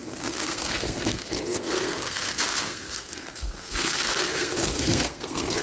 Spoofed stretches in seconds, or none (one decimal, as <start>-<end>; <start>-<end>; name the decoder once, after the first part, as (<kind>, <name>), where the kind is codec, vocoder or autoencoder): 0.0-5.6 (codec, SNAC)